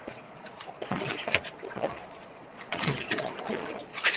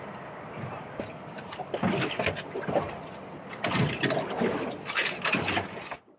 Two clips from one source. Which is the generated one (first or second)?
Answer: first